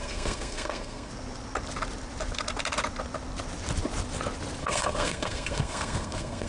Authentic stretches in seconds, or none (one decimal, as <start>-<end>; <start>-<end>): 1.1-4.6